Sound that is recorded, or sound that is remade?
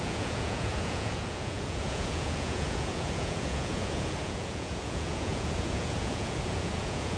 remade